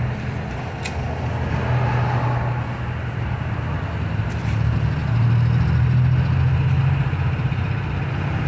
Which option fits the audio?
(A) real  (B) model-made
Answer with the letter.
A